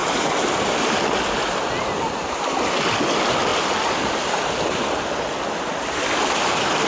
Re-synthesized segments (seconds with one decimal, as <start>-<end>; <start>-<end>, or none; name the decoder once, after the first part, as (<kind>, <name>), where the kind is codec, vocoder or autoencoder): none